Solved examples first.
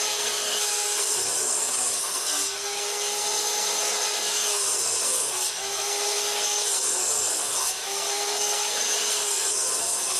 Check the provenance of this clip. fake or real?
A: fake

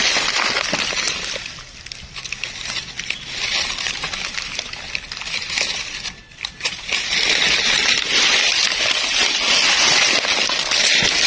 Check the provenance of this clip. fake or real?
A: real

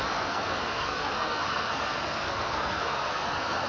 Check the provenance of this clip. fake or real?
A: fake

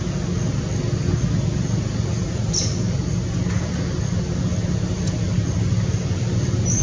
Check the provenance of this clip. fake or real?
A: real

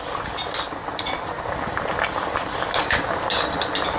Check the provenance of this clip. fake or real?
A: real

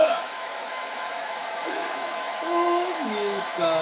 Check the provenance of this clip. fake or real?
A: fake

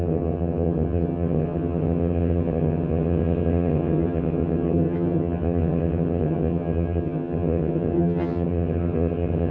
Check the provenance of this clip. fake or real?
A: fake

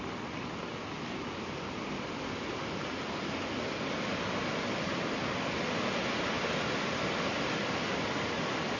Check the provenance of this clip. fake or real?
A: real